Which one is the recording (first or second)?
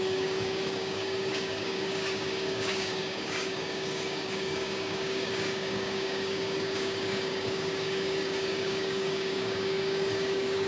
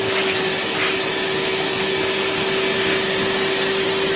second